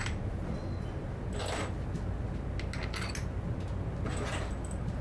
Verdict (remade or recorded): recorded